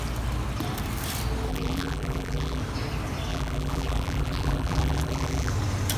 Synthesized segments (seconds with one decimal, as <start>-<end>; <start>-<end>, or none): 1.5-2.6; 3.3-5.5